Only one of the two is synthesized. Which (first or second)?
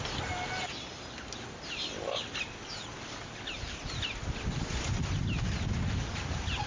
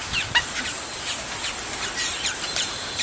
second